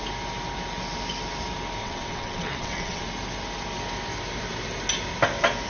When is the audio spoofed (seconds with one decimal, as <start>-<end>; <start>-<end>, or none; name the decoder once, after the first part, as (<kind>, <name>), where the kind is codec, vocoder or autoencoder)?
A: 1.8-3.0 (vocoder, WaveNeXt)